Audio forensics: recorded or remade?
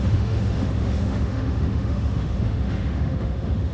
remade